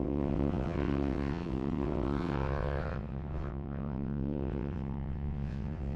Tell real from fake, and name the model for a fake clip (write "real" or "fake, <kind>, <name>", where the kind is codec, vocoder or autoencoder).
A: fake, vocoder, WaveNeXt